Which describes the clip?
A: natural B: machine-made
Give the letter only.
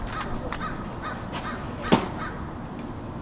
A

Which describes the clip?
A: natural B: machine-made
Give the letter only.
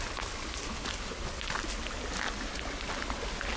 A